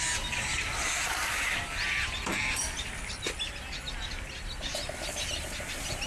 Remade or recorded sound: recorded